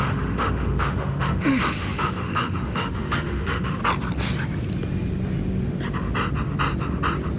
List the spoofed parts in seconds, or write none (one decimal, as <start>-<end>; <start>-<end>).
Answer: 0.0-3.8